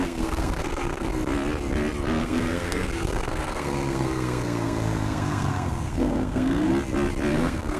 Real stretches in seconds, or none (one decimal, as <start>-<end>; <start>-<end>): 1.1-2.2; 6.7-7.3